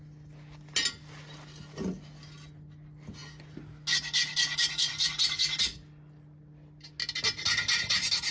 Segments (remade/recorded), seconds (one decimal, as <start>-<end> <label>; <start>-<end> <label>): 0.0-8.3 recorded